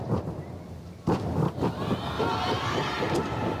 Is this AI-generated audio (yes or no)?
no